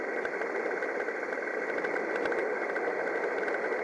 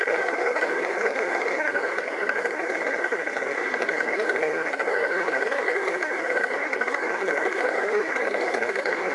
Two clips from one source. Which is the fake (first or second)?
second